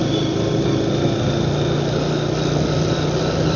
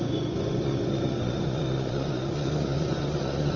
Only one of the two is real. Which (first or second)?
first